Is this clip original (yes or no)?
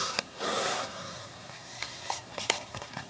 no